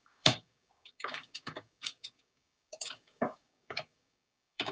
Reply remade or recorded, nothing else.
remade